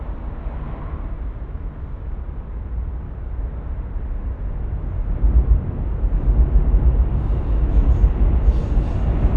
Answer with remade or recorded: recorded